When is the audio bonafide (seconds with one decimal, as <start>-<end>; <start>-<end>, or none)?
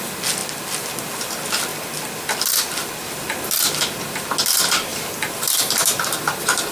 0.0-4.9